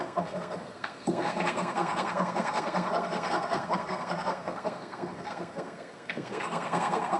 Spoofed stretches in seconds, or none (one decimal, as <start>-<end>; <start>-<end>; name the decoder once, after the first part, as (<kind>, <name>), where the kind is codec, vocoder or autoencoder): 0.0-7.2 (codec, SNAC)